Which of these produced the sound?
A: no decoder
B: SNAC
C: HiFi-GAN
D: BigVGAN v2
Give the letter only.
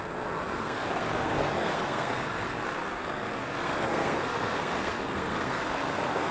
B